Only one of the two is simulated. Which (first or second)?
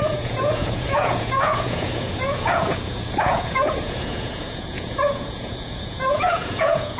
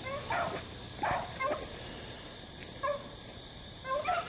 first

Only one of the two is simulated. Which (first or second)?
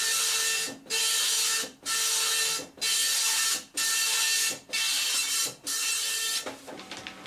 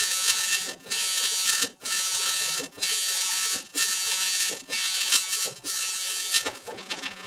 second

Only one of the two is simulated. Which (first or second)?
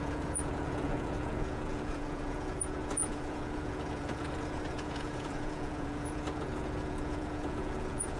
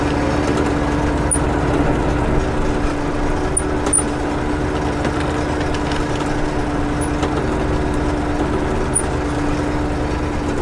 first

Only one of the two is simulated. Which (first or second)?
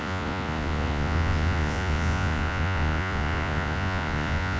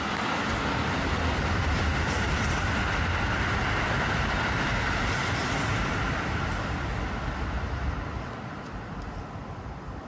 first